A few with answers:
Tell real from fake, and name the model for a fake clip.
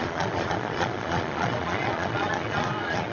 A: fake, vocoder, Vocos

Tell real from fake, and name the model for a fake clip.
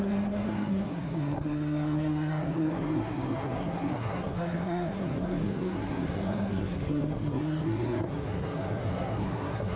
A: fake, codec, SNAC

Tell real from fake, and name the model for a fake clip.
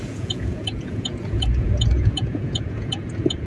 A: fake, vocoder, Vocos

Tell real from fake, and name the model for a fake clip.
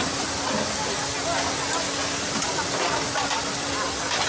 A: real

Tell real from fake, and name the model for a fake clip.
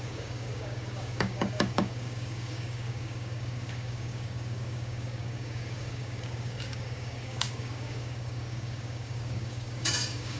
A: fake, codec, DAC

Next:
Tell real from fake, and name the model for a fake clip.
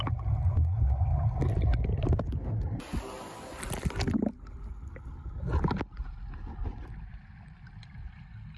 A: real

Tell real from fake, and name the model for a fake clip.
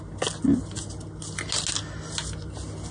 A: real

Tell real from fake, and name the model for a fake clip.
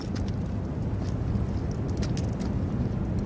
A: real